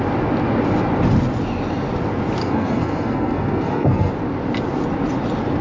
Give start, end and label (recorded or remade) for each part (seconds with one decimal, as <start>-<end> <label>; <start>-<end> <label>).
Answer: 0.0-2.4 recorded; 2.4-4.1 remade; 4.1-5.6 recorded